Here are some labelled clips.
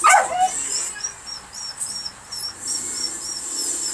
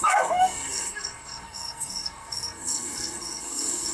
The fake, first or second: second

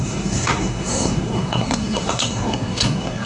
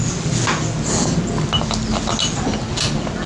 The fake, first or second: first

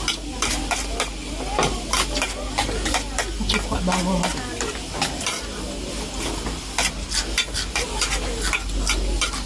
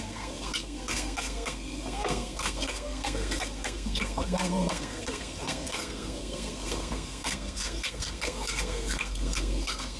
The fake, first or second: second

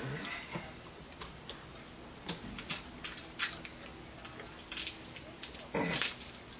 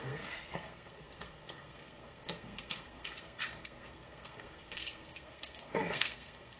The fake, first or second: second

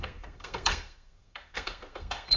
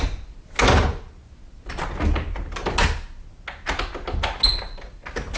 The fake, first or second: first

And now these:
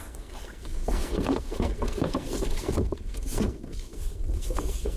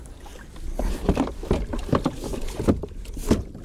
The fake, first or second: first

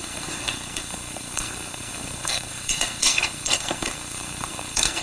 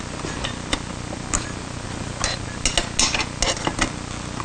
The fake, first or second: first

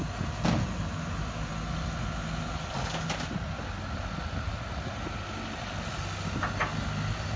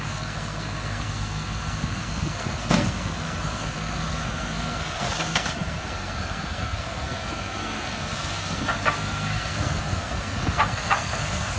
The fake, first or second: second